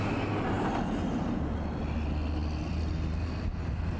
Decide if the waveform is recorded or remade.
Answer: recorded